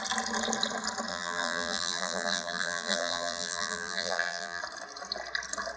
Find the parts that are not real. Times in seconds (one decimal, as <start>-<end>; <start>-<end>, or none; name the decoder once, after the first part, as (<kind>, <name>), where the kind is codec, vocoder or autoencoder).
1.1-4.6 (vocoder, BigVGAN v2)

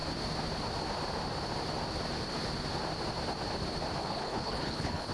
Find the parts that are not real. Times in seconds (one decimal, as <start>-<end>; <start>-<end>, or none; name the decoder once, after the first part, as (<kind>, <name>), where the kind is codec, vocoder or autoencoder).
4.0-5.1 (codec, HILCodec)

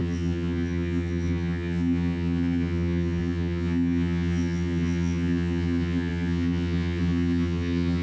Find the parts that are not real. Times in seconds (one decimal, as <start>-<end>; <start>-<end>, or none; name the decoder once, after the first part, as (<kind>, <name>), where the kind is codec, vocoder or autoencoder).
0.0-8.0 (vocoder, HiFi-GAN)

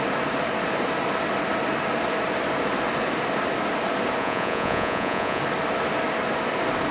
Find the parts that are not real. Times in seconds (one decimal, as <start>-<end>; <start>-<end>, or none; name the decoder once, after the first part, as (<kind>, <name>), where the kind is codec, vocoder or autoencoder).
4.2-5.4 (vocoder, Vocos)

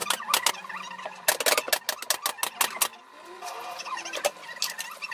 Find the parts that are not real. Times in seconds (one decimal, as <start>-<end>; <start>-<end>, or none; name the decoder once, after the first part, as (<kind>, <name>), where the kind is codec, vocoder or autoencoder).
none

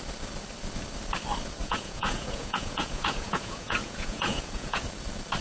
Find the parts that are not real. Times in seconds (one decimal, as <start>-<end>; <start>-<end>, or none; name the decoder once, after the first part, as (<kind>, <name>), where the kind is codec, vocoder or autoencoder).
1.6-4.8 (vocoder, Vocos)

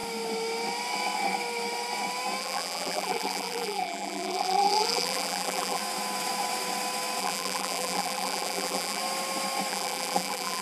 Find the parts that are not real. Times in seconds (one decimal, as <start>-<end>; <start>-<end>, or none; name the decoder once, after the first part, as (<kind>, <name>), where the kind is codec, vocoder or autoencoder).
2.4-5.8 (vocoder, BigVGAN v2); 7.2-9.0; 9.7-10.6